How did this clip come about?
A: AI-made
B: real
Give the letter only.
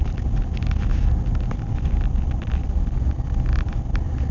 B